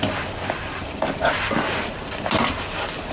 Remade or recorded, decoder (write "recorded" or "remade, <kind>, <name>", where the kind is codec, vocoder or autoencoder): recorded